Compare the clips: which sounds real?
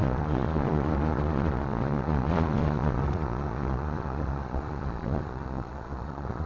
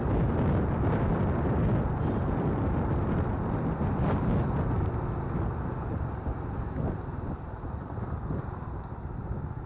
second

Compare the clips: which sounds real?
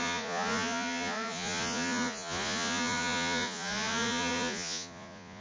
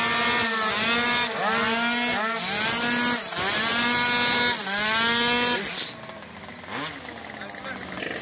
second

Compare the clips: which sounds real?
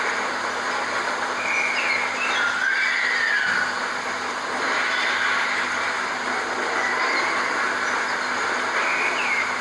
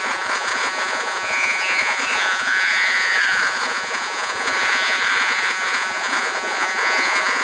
first